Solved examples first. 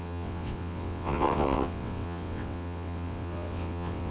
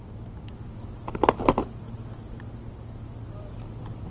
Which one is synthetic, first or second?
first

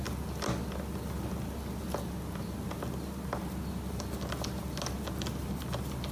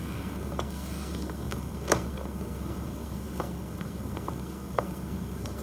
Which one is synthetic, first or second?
second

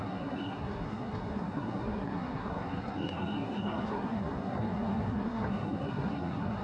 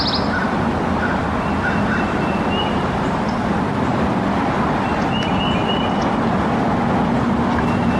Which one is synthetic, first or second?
first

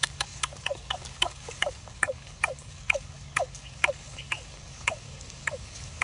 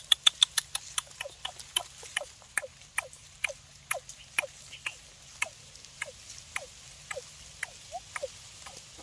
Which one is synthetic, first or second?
first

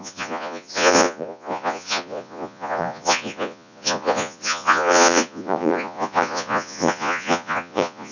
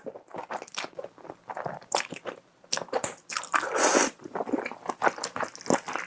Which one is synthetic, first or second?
first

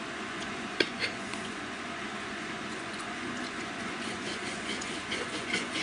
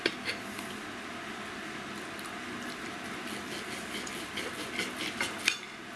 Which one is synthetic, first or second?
first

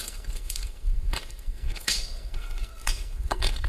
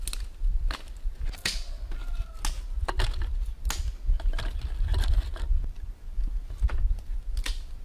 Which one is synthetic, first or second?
first